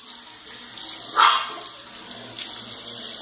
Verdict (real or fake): real